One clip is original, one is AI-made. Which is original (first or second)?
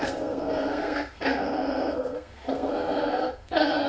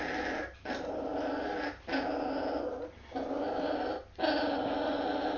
second